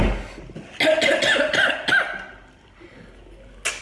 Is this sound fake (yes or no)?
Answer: no